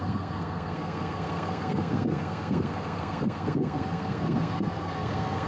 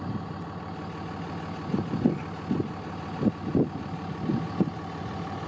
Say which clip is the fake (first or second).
first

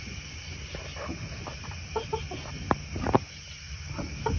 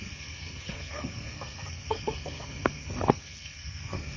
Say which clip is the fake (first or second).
second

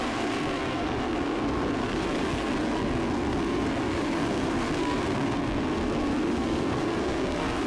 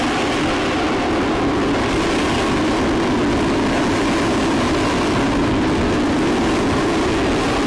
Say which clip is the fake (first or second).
first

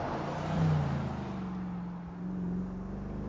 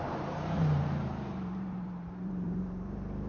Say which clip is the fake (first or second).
second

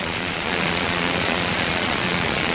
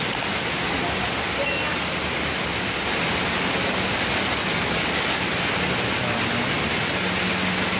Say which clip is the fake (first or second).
first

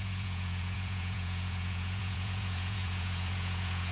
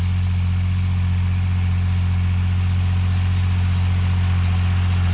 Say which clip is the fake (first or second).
first